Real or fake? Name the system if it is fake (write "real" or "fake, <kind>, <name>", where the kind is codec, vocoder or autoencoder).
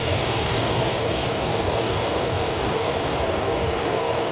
fake, codec, DAC